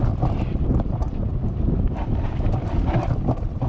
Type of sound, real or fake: real